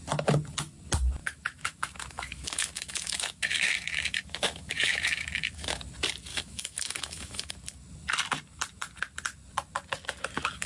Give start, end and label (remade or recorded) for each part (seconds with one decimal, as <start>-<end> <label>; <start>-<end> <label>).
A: 0.0-1.2 recorded; 1.2-5.8 remade; 5.8-6.3 recorded; 6.3-7.5 remade; 7.5-10.7 recorded

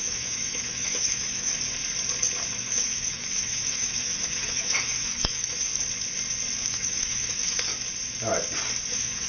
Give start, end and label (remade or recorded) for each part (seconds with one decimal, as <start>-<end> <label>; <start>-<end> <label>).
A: 0.0-1.5 remade; 1.5-2.5 recorded; 2.5-5.7 remade; 5.7-6.7 recorded; 6.7-7.7 remade; 7.7-8.9 recorded; 8.9-9.3 remade